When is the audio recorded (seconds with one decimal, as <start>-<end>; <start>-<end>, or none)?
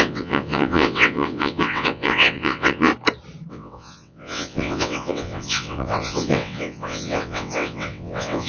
2.9-3.5